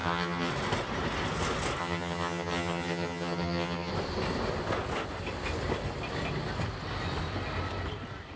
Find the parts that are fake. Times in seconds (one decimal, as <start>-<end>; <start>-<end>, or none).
0.0-0.5; 1.8-3.9